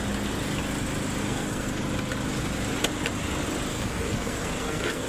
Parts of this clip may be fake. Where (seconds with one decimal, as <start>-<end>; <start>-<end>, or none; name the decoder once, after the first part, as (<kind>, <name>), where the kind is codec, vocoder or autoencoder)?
1.2-1.8 (codec, SNAC); 3.7-5.1